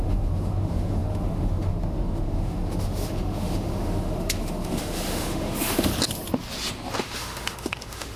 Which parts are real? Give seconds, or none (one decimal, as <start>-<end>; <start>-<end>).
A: 5.9-7.0